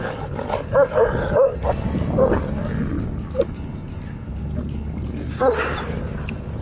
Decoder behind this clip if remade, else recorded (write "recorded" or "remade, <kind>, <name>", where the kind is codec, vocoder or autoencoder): recorded